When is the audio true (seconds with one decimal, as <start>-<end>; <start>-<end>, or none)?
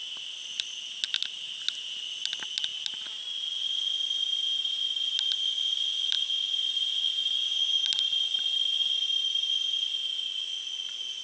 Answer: 0.0-11.2